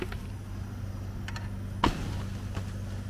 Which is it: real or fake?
real